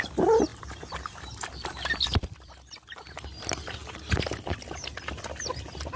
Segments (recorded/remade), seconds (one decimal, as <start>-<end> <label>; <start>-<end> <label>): 0.0-0.5 recorded; 0.5-2.5 remade; 2.5-6.0 recorded